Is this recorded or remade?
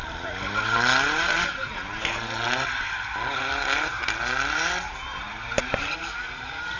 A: recorded